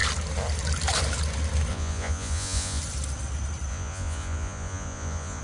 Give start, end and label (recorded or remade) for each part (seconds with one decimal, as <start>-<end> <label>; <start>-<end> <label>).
0.0-1.7 recorded; 1.7-2.8 remade; 2.8-3.7 recorded; 3.7-5.4 remade